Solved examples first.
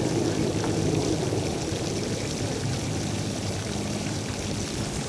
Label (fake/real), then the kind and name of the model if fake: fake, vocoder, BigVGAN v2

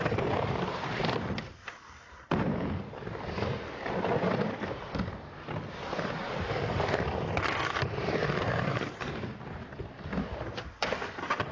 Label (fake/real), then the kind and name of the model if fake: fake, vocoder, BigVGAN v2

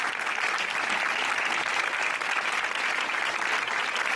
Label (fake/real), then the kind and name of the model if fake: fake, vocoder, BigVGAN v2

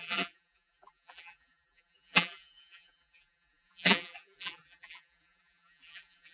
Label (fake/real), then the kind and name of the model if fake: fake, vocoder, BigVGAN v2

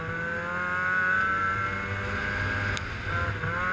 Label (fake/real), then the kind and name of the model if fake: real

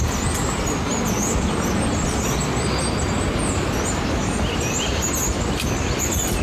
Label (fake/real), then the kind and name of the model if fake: real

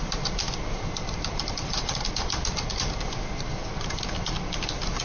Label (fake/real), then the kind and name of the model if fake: fake, vocoder, BigVGAN v2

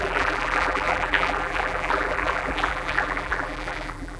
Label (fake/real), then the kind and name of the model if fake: fake, vocoder, BigVGAN v2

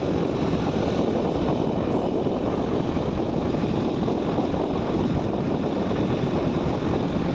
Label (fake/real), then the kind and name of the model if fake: fake, vocoder, BigVGAN v2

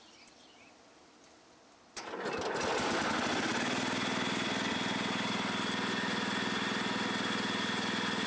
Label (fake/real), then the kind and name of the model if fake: real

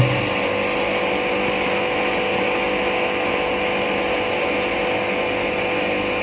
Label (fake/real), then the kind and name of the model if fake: real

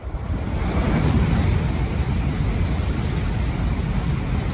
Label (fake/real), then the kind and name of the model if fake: real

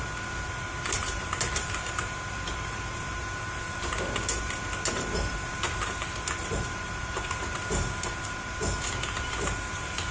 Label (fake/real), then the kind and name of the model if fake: fake, vocoder, BigVGAN v2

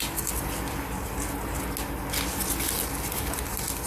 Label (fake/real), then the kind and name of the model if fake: real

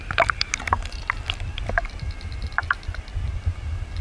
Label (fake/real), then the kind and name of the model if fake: fake, vocoder, BigVGAN v2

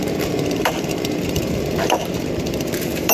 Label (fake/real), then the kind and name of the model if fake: fake, vocoder, BigVGAN v2